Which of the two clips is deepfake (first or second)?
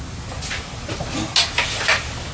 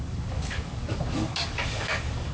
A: second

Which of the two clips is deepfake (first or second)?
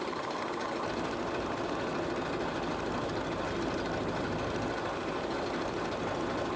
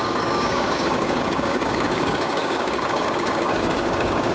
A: second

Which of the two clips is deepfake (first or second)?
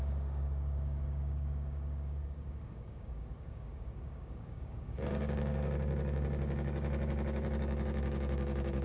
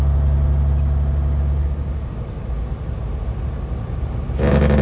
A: first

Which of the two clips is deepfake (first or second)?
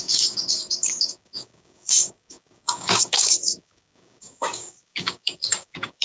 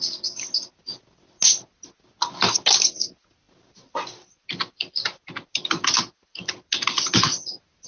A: first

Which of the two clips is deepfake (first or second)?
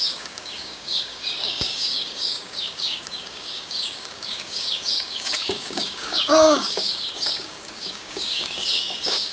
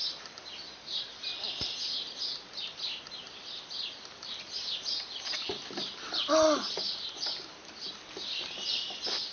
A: first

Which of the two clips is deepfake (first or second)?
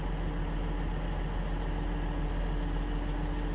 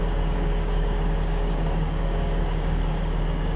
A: second